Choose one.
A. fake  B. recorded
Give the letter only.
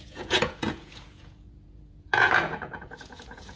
A